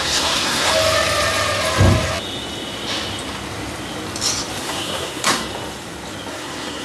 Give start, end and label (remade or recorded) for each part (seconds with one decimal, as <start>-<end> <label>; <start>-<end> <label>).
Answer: 0.0-0.7 remade; 0.7-4.6 recorded; 4.6-5.4 remade; 5.4-6.3 recorded; 6.3-6.8 remade